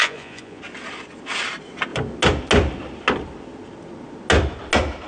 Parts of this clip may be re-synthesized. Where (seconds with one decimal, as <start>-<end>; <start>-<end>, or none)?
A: 0.0-0.6